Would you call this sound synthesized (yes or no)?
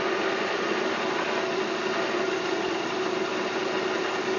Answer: no